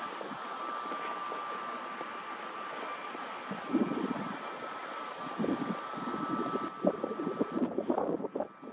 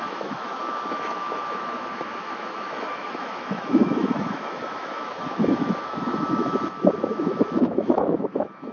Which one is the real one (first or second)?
first